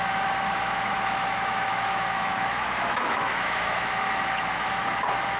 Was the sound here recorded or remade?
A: remade